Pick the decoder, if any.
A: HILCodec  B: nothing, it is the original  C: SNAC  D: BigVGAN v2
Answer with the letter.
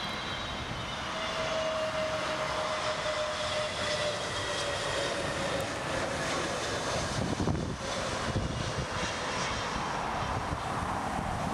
B